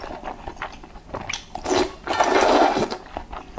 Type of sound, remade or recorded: recorded